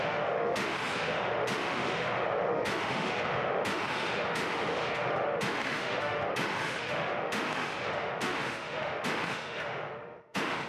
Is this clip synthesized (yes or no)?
yes